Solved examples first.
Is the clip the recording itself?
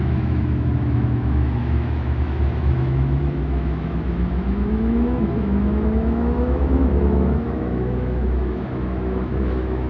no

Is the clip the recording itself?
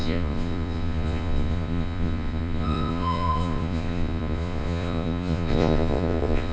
no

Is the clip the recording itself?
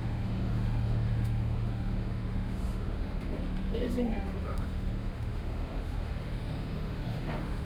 no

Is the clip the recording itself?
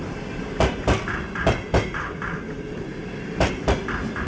yes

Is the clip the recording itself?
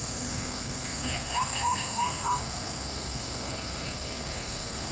no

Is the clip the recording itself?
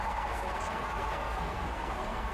no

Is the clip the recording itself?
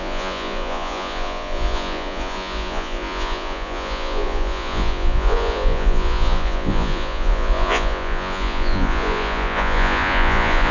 no